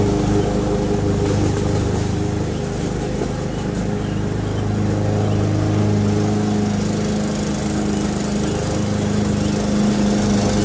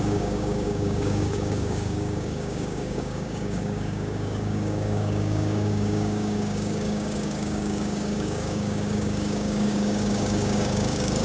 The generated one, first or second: second